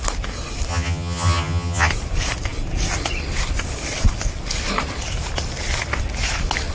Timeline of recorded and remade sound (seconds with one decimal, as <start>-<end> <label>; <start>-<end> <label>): 0.0-0.7 recorded; 0.7-1.9 remade; 1.9-6.7 recorded